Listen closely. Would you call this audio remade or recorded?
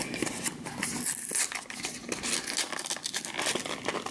recorded